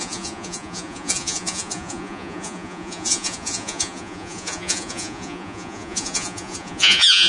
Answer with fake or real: fake